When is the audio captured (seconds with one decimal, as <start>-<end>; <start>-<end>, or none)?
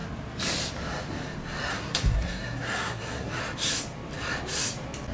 0.0-1.7; 3.4-5.1